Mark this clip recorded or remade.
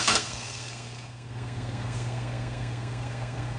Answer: remade